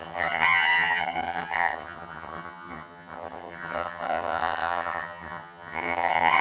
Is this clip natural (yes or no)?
no